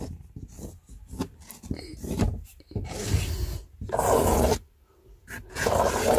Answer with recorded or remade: recorded